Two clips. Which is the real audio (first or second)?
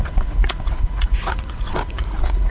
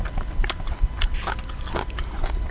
second